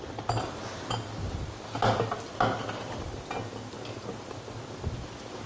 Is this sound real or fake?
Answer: real